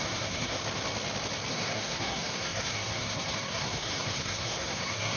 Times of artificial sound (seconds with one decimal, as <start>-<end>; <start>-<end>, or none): 0.0-0.6; 1.5-5.2